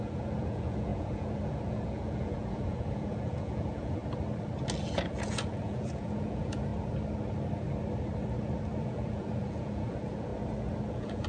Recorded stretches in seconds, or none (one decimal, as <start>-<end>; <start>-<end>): 4.0-4.9; 6.7-8.8; 10.3-10.9